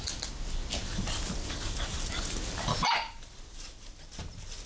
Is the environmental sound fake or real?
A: real